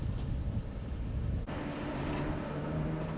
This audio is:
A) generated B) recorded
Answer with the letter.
A